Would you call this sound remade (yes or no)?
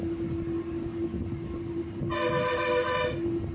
no